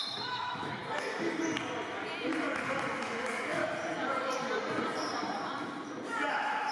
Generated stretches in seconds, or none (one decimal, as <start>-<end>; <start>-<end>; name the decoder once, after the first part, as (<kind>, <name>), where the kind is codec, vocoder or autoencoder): 0.0-0.8 (autoencoder, DAC-VAE); 3.0-3.6; 6.3-6.7